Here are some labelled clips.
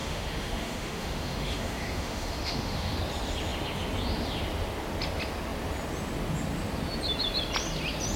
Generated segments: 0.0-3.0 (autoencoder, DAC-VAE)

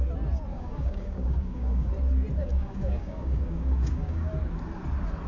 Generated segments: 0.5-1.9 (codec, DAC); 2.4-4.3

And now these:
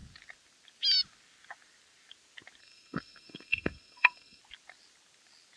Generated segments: 2.6-4.4 (codec, SNAC)

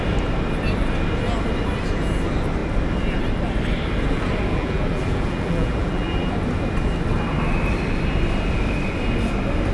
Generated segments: 4.5-6.3 (vocoder, BigVGAN v2)

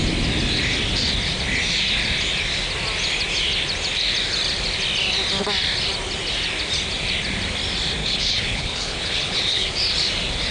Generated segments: 8.0-9.7 (codec, HILCodec)

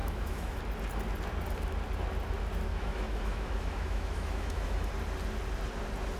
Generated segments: 0.0-0.6 (autoencoder, DAC-VAE); 2.7-4.9

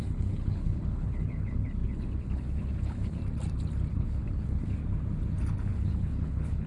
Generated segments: 0.0-3.2 (codec, HILCodec); 3.9-4.8; 5.6-6.7